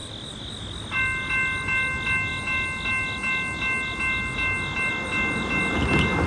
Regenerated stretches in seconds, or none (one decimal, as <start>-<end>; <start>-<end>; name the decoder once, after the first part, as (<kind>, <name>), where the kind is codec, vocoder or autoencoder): none